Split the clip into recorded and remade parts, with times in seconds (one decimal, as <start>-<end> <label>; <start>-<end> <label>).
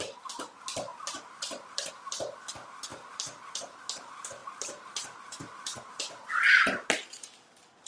0.0-0.9 recorded; 0.9-1.9 remade; 1.9-2.9 recorded; 2.9-3.6 remade; 3.6-4.4 recorded; 4.4-5.8 remade; 5.8-7.9 recorded